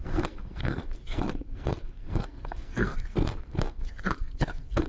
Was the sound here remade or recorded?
remade